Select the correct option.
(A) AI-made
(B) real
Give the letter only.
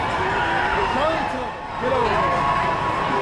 B